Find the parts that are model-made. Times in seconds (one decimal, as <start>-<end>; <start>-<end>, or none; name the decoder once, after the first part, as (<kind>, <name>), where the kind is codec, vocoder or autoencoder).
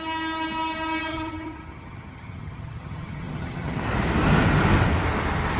1.1-3.8 (vocoder, HiFi-GAN)